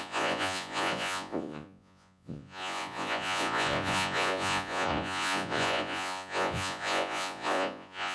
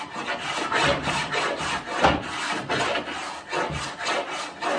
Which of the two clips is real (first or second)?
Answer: second